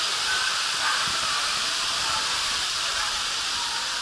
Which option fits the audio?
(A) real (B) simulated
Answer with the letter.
A